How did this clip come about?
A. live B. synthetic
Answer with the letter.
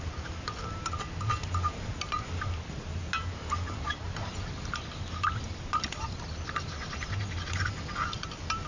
A